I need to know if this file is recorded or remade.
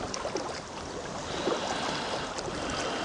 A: recorded